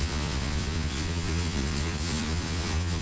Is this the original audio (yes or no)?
no